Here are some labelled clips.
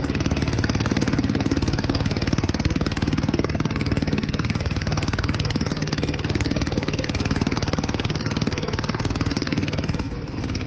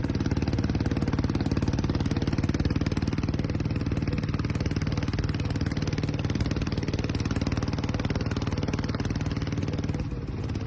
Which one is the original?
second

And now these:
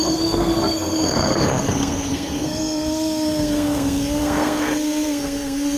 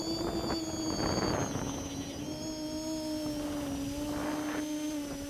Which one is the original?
second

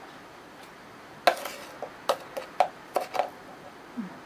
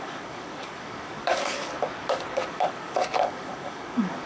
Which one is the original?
first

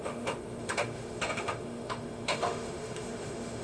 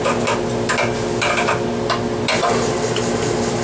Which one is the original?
second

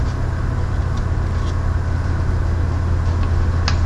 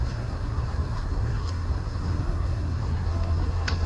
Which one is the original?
first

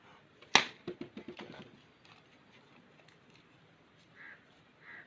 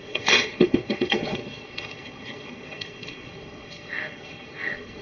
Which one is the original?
first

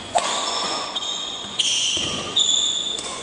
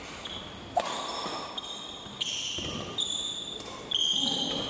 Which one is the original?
second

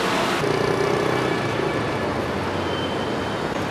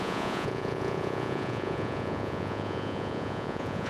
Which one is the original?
first